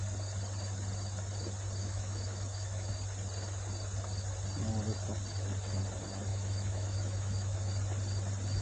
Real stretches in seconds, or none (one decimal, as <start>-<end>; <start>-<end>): 0.0-1.8; 2.9-6.3; 7.7-8.6